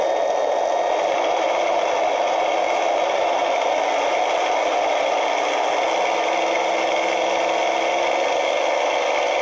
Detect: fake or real real